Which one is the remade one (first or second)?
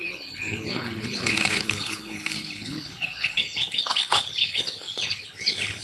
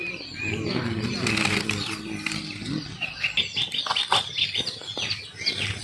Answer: first